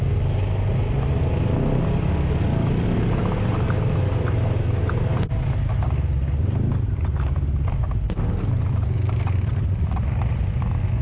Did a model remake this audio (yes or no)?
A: no